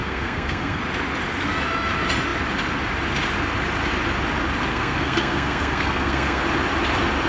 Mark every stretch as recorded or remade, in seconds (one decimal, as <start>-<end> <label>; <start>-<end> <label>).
0.0-0.8 remade; 0.8-4.7 recorded; 4.7-6.4 remade; 6.4-7.3 recorded

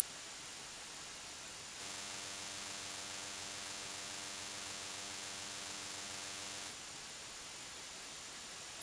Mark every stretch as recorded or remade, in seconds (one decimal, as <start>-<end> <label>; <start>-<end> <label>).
0.0-1.8 recorded; 1.8-6.7 remade; 6.7-8.8 recorded

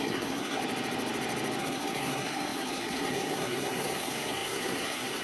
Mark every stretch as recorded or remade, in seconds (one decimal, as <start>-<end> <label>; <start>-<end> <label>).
0.0-0.6 remade; 0.6-1.6 recorded; 1.6-5.2 remade

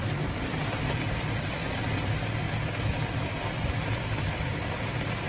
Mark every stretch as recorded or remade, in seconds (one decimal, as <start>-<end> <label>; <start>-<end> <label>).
0.0-1.6 remade; 1.6-4.4 recorded; 4.4-5.3 remade

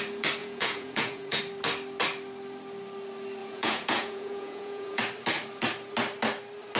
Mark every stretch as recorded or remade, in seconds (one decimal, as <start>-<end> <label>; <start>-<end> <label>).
0.0-0.4 recorded; 0.4-1.4 remade; 1.4-3.4 recorded; 3.4-5.0 remade; 5.0-6.8 recorded

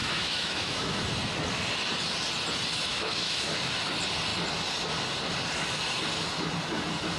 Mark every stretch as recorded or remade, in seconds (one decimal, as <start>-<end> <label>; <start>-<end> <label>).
0.0-1.0 remade; 1.0-2.9 recorded; 2.9-3.5 remade; 3.5-7.2 recorded

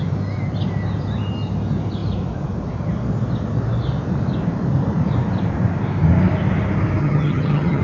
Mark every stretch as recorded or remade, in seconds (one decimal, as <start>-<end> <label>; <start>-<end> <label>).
0.0-7.0 recorded; 7.0-7.8 remade

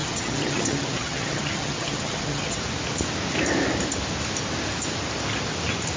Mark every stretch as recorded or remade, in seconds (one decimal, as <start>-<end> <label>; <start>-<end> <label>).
0.0-2.6 remade; 2.6-6.0 recorded